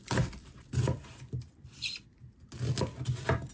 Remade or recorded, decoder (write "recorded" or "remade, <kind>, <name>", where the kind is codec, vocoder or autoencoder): recorded